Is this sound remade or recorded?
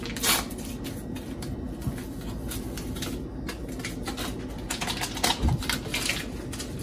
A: recorded